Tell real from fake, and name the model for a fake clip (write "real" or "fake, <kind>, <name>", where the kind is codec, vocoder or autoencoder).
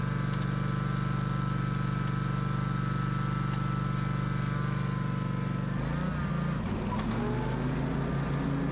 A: real